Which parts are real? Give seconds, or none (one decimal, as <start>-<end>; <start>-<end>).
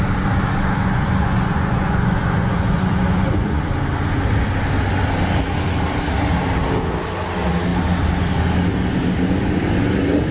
0.0-0.8; 3.6-10.3